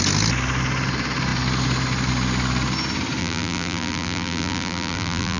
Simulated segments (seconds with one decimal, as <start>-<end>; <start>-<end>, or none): 3.2-5.4